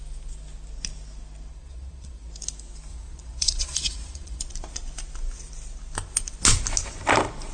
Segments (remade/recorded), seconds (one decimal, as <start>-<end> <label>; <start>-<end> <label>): 0.0-1.5 recorded; 1.5-2.3 remade; 2.3-2.9 recorded; 2.9-4.4 remade; 4.4-7.5 recorded